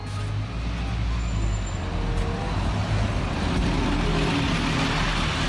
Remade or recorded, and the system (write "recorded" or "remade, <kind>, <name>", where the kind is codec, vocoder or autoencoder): recorded